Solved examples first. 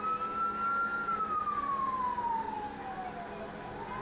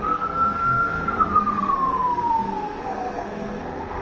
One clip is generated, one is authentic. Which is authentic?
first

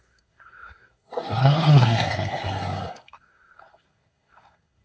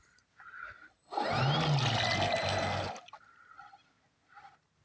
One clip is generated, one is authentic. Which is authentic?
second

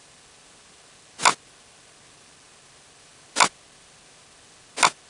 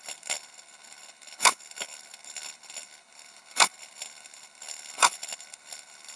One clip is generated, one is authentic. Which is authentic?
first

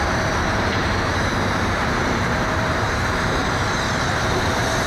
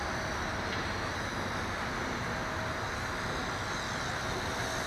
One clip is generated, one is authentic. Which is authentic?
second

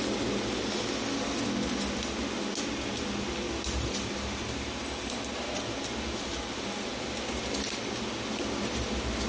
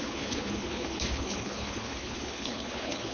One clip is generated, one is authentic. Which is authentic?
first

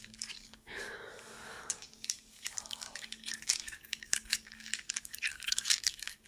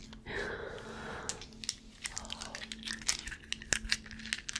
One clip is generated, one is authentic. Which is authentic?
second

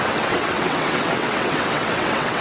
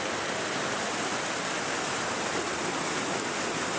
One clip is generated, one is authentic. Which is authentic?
second